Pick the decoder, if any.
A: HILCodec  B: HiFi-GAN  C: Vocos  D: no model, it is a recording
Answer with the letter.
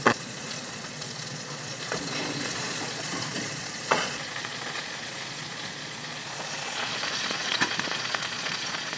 C